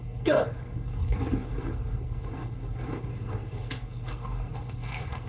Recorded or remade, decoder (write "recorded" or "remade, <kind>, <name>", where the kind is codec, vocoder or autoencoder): remade, codec, SNAC